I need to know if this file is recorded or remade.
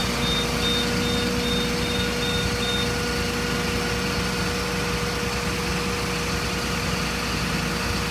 recorded